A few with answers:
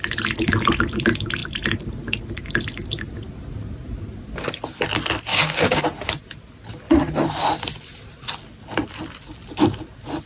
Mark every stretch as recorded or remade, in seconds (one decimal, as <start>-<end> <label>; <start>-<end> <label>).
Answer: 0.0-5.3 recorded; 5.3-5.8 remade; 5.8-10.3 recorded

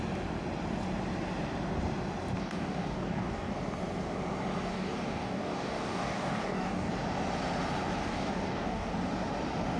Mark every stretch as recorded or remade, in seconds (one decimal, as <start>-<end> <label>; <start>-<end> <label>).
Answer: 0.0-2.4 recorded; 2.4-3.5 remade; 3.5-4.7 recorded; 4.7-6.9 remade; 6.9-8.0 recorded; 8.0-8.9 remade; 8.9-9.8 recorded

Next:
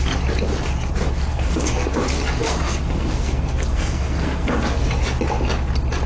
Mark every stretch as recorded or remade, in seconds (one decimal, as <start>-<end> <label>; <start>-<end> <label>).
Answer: 0.0-1.3 recorded; 1.3-1.9 remade; 1.9-2.4 recorded; 2.4-4.8 remade; 4.8-6.1 recorded